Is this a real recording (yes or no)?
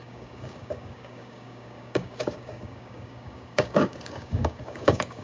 no